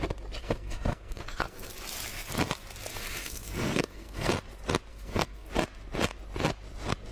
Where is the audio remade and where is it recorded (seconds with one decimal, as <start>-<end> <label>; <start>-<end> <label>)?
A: 0.0-0.4 recorded; 0.4-1.7 remade; 1.7-2.9 recorded; 2.9-4.3 remade; 4.3-4.9 recorded; 4.9-5.5 remade; 5.5-7.1 recorded